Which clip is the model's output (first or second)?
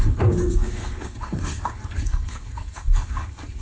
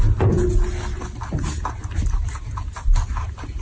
first